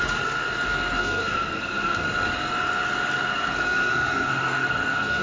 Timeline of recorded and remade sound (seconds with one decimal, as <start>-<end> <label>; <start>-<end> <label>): 0.0-1.0 recorded; 1.0-2.0 remade; 2.0-3.3 recorded; 3.3-5.2 remade